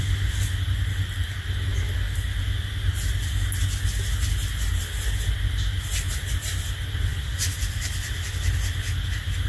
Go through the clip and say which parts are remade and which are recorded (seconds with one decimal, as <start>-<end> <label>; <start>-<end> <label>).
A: 0.0-7.1 recorded; 7.1-8.3 remade; 8.3-9.5 recorded